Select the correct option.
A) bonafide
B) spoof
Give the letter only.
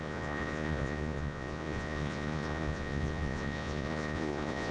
B